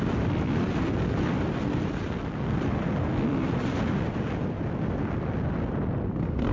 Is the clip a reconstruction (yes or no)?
no